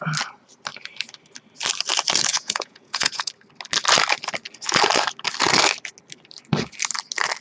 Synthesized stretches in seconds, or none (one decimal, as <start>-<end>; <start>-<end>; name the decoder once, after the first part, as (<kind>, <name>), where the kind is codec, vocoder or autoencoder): 2.3-3.3 (vocoder, Vocos)